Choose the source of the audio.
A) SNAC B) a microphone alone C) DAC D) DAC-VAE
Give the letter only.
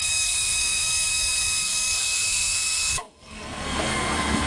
A